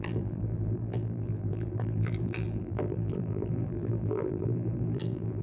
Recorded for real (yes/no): no